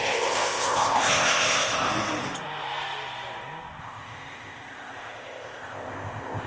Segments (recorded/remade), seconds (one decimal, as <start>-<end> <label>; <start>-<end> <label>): 0.0-1.9 remade; 1.9-3.8 recorded; 3.8-6.5 remade